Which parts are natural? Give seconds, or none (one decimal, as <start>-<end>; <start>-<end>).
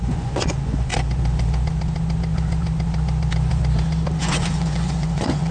0.9-4.2